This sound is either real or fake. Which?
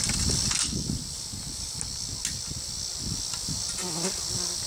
real